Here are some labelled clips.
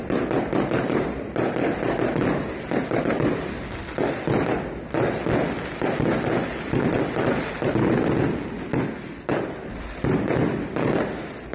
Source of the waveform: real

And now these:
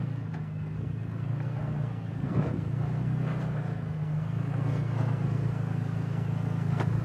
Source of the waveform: fake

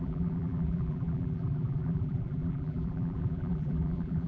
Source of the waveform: fake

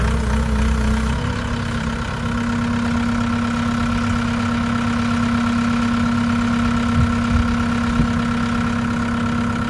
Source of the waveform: real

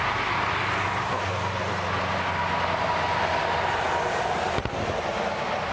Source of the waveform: real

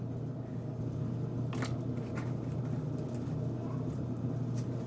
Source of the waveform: real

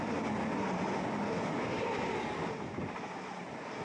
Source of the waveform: real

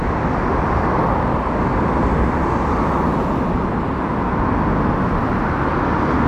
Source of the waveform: real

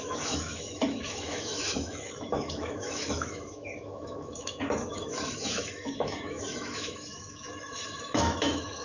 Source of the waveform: fake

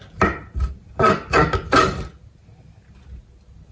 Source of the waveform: real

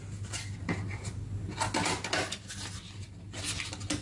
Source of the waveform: real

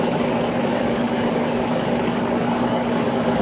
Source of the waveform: fake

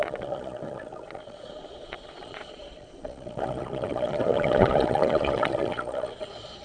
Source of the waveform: fake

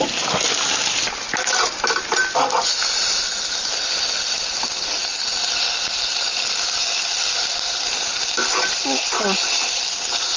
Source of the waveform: real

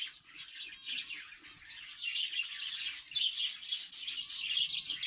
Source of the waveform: real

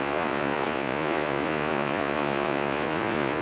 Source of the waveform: fake